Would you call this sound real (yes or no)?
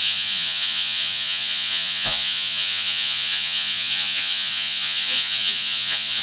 no